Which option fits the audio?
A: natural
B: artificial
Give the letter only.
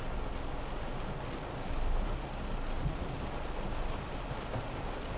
A